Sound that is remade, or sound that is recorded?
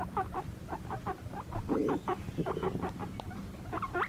remade